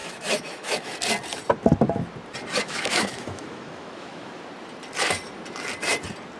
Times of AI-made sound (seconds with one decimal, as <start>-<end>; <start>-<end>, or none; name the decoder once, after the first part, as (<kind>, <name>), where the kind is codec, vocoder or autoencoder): 0.0-0.9 (autoencoder, DAC-VAE); 2.6-4.3